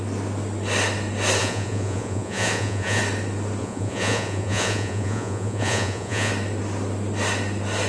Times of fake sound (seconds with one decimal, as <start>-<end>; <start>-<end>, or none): 1.4-3.0; 3.6-6.3